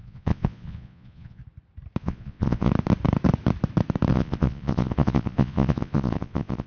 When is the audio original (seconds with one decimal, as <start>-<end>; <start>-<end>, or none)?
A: 1.4-2.0; 2.7-4.1